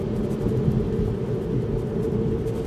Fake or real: real